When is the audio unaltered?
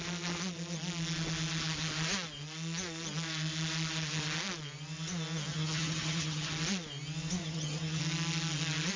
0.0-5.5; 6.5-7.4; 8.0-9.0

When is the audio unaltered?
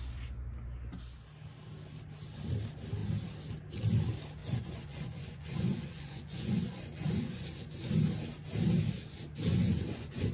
0.0-4.4; 7.9-9.5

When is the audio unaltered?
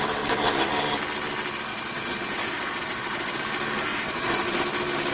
0.0-1.7; 3.4-3.9; 4.6-5.1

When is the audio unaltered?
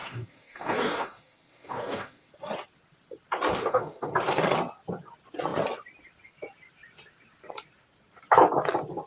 2.3-3.6; 4.1-9.1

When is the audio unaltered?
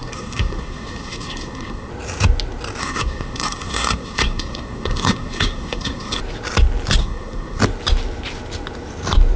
1.9-2.8; 6.2-7.0; 7.6-9.4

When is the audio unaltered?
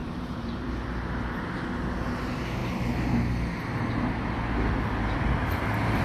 0.7-5.4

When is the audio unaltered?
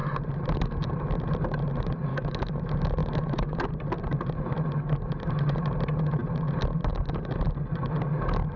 0.0-2.1; 2.6-3.0; 3.6-8.6